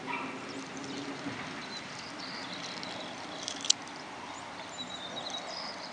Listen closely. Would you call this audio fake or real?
real